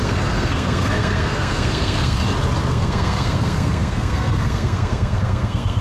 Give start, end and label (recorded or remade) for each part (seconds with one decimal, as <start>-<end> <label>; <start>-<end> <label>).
0.0-2.2 remade; 2.2-2.7 recorded; 2.7-5.8 remade